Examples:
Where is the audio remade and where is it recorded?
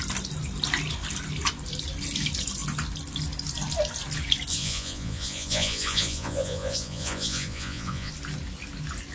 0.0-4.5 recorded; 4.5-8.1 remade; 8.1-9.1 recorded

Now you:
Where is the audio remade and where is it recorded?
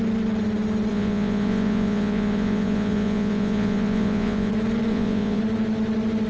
0.0-0.9 recorded; 0.9-4.5 remade; 4.5-4.9 recorded; 4.9-5.4 remade; 5.4-6.3 recorded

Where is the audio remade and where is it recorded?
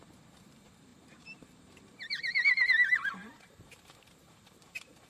0.0-5.1 remade